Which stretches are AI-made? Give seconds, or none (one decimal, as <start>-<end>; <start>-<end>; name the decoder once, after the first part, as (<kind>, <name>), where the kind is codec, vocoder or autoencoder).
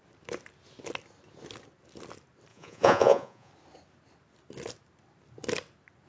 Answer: 2.5-3.5 (vocoder, Vocos)